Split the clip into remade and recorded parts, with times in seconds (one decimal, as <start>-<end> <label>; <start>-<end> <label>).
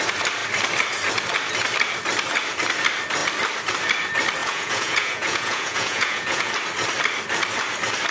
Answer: 0.0-4.4 recorded; 4.4-6.5 remade; 6.5-8.1 recorded